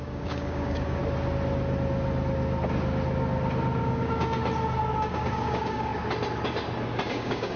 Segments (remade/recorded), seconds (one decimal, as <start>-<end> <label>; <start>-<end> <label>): 0.0-1.0 remade; 1.0-3.8 recorded; 3.8-4.4 remade; 4.4-4.9 recorded; 4.9-5.9 remade; 5.9-7.1 recorded; 7.1-7.6 remade